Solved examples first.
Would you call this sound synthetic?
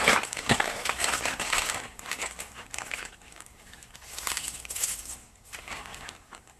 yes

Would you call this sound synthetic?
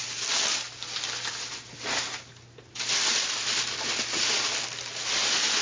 no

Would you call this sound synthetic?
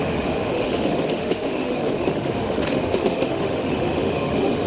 yes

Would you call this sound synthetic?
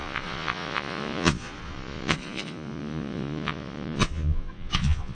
yes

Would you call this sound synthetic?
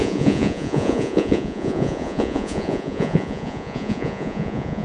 yes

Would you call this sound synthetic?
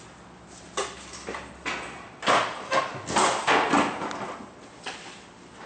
no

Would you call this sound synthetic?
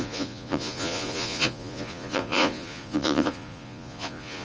yes